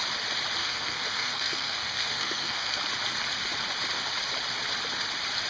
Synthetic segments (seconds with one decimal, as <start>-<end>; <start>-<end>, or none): 0.6-2.8